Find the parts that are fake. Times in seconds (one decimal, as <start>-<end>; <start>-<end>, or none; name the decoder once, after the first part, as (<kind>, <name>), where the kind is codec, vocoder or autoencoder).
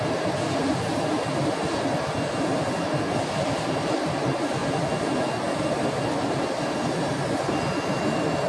0.0-4.6 (vocoder, BigVGAN v2); 5.6-8.5